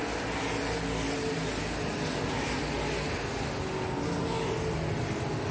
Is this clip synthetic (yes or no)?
no